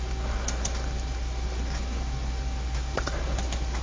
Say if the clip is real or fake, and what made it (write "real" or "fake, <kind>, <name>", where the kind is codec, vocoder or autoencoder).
real